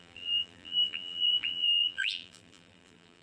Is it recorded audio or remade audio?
remade